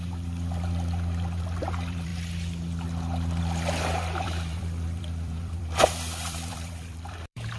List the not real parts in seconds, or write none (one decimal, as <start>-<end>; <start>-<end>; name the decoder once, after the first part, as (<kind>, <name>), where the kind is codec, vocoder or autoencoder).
0.0-2.1 (vocoder, BigVGAN v2); 3.4-7.6